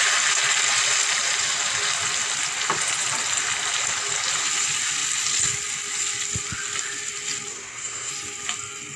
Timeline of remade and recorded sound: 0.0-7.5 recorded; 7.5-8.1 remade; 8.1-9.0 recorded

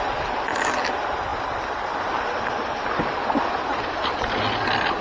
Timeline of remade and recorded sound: 0.0-5.0 recorded

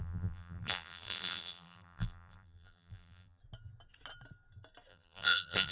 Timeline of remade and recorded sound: 0.0-3.4 remade; 3.4-4.9 recorded; 4.9-5.7 remade

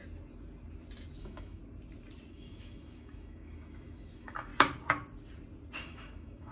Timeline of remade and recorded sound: 0.0-1.2 recorded; 1.2-1.6 remade; 1.6-2.3 recorded; 2.3-4.5 remade; 4.5-5.8 recorded; 5.8-6.5 remade

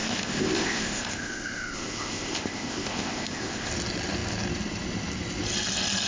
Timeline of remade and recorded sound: 0.0-3.7 remade; 3.7-6.1 recorded

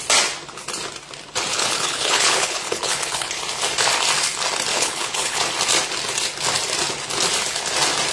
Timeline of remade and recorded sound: 0.0-1.5 recorded; 1.5-3.3 remade; 3.3-4.7 recorded; 4.7-5.4 remade; 5.4-8.1 recorded

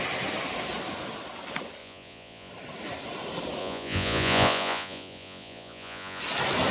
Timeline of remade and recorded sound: 0.0-1.8 recorded; 1.8-2.5 remade; 2.5-3.6 recorded; 3.6-6.2 remade; 6.2-6.7 recorded

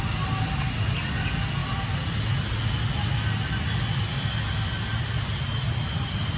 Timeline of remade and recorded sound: 0.0-6.4 recorded